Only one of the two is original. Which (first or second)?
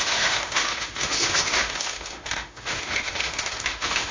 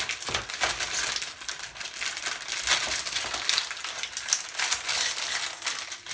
second